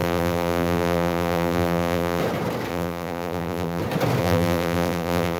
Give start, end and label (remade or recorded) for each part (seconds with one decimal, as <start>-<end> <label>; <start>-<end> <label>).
0.0-2.2 remade; 2.2-2.7 recorded; 2.7-3.8 remade; 3.8-4.2 recorded; 4.2-5.4 remade